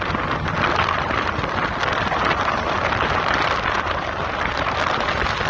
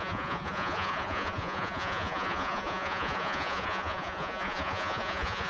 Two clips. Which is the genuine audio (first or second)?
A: first